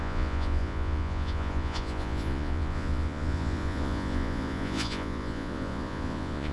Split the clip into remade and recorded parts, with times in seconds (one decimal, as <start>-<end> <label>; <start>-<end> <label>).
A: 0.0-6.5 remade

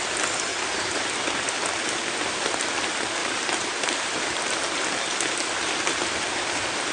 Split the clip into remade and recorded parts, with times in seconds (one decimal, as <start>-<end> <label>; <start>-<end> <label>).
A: 0.0-0.5 recorded; 0.5-1.1 remade; 1.1-3.2 recorded; 3.2-4.8 remade; 4.8-6.9 recorded

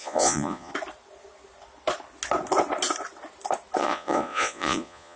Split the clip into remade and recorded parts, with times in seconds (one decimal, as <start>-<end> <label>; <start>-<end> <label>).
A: 0.0-0.7 remade; 0.7-3.8 recorded; 3.8-5.2 remade

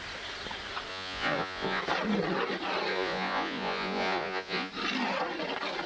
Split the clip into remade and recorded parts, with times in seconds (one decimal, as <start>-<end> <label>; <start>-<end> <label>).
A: 0.0-0.9 recorded; 0.9-1.8 remade; 1.8-2.9 recorded; 2.9-4.7 remade; 4.7-5.9 recorded